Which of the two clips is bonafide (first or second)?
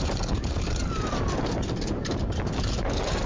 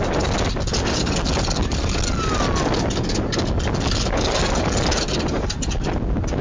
second